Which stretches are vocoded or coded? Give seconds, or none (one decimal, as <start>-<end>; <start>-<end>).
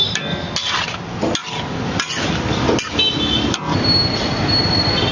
none